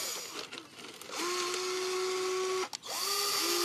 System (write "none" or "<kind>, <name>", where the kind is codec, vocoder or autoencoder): none